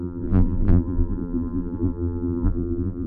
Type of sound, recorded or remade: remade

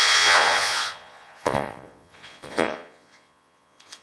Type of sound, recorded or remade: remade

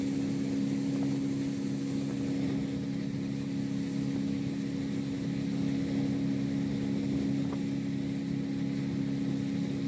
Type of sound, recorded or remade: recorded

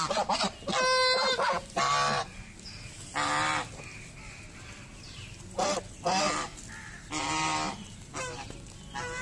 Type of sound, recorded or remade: recorded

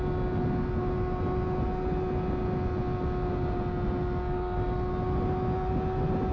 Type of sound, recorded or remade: recorded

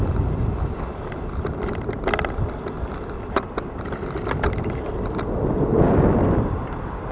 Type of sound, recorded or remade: remade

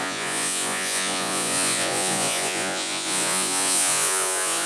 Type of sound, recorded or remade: remade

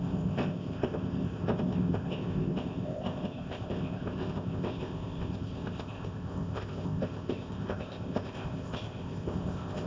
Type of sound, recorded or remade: remade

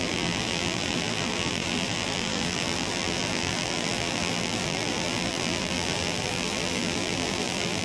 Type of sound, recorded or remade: remade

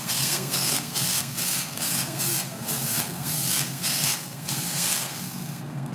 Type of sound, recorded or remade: remade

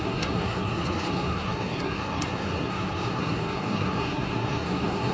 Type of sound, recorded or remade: remade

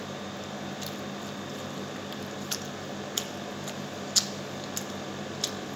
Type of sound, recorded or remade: recorded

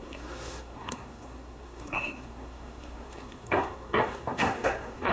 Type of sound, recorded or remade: remade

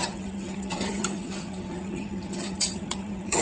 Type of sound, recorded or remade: remade